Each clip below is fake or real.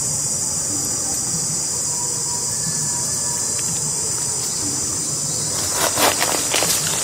real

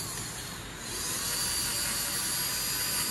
real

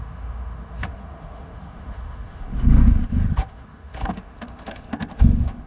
fake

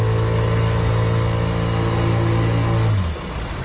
real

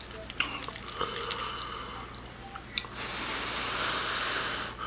real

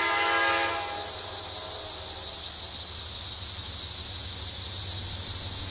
real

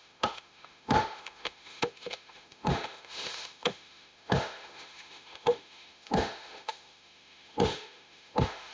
fake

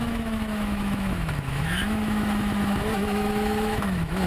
fake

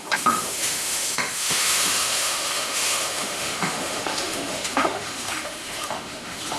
fake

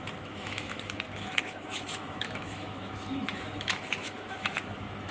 fake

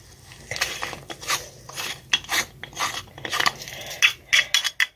real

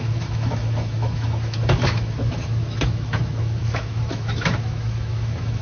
fake